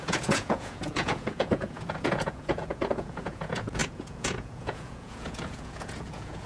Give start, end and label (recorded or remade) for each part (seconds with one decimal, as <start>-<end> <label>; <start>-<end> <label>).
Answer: 0.0-6.5 remade